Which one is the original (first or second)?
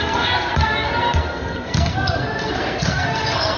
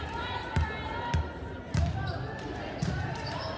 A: second